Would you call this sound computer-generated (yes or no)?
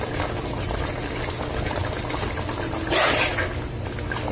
no